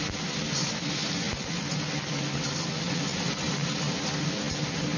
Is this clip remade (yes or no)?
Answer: no